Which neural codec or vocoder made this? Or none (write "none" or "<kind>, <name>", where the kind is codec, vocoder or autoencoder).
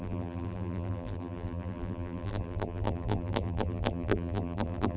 vocoder, BigVGAN v2